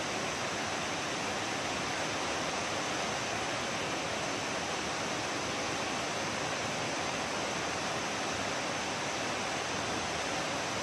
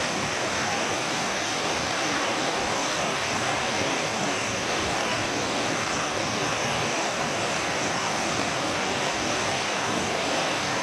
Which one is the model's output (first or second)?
second